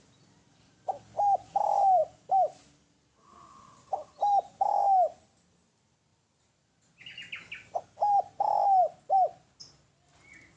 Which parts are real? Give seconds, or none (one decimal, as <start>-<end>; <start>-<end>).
0.0-10.6